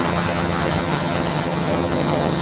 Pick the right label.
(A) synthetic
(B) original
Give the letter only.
A